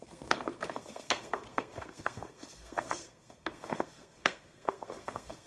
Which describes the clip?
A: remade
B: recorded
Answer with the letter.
A